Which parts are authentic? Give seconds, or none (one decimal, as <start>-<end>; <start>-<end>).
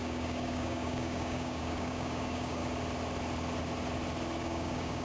2.6-4.4